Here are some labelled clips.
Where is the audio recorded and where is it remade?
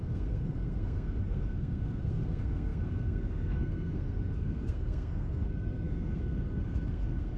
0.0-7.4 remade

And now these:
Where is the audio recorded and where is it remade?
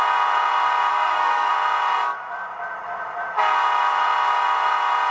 0.0-0.9 recorded; 0.9-1.5 remade; 1.5-5.1 recorded